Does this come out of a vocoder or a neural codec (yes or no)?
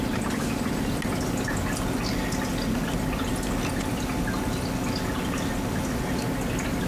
no